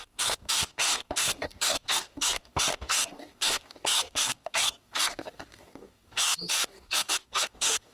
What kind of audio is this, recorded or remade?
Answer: remade